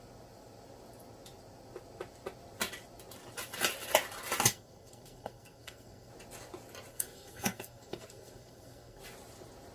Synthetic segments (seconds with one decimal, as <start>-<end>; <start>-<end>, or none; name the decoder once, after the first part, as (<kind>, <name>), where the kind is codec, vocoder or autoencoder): 4.5-6.1 (codec, SNAC); 6.9-9.0